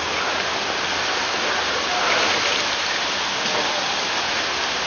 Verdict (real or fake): real